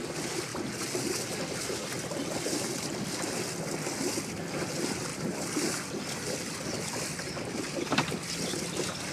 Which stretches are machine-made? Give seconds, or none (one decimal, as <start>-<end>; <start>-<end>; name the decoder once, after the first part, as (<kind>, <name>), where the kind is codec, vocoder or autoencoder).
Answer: none